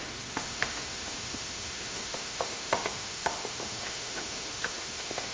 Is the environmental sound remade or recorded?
remade